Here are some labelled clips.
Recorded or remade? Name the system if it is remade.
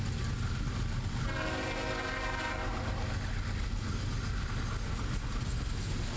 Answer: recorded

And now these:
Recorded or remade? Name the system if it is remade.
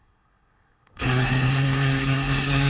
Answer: remade, codec, SNAC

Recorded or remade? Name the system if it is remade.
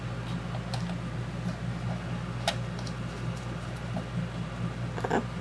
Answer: recorded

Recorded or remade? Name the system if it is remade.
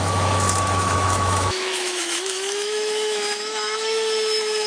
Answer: remade, autoencoder, DAC-VAE